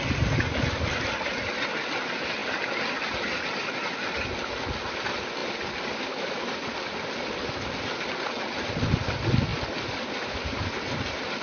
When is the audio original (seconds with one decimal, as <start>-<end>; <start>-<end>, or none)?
0.0-11.4